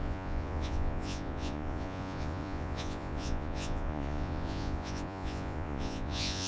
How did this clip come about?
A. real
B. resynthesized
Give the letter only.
B